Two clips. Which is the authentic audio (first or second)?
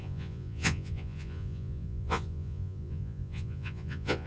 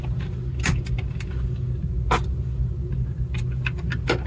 second